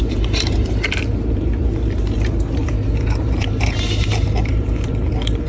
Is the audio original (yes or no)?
no